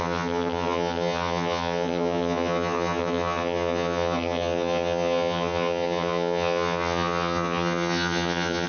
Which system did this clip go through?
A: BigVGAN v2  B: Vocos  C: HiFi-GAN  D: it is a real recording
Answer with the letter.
C